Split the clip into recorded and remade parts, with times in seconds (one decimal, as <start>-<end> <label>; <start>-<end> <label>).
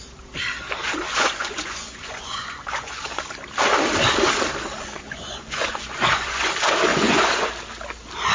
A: 0.0-0.8 recorded; 0.8-3.0 remade; 3.0-4.8 recorded; 4.8-6.5 remade; 6.5-6.9 recorded; 6.9-7.5 remade; 7.5-8.3 recorded